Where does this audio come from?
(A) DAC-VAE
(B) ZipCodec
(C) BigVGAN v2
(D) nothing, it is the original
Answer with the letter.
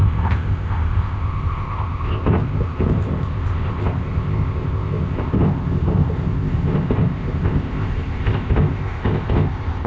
B